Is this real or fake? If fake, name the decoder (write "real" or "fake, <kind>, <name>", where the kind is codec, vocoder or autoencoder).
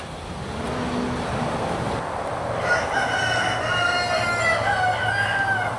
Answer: real